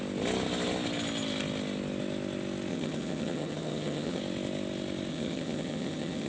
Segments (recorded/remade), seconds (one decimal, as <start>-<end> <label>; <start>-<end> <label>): 0.0-2.7 recorded; 2.7-4.2 remade; 4.2-5.1 recorded; 5.1-6.3 remade